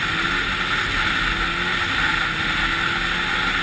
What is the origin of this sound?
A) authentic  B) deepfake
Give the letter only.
A